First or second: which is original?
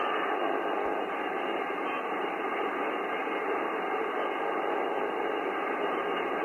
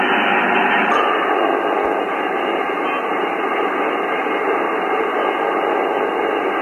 second